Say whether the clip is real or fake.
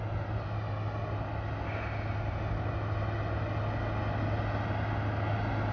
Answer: real